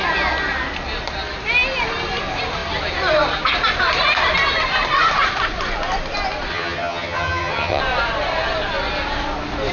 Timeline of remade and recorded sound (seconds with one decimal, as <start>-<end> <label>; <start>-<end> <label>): 0.0-6.5 recorded; 6.5-7.8 remade; 7.8-9.7 recorded